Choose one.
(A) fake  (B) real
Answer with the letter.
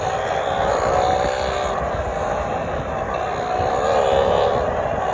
B